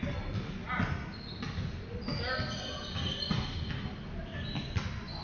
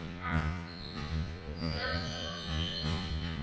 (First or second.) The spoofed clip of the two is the second